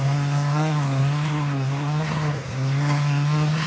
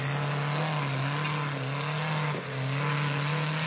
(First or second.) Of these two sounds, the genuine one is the second